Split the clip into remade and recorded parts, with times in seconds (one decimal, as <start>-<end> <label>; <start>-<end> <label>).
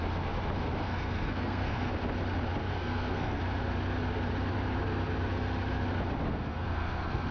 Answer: 0.0-0.8 recorded; 0.8-1.9 remade; 1.9-2.6 recorded; 2.6-3.4 remade; 3.4-6.3 recorded; 6.3-7.3 remade